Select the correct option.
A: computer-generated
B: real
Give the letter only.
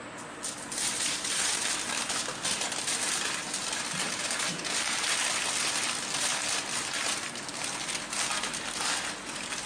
B